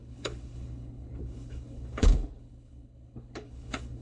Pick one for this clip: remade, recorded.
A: remade